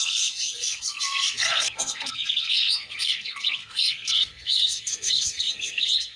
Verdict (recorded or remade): remade